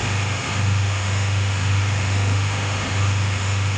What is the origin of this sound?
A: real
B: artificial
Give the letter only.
B